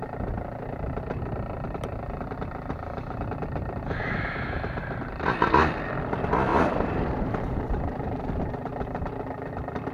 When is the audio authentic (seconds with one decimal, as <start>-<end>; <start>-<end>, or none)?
0.0-6.5; 8.4-9.9